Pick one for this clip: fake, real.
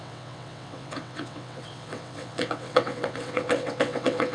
fake